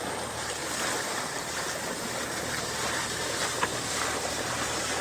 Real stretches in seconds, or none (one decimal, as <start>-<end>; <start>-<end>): 0.0-5.0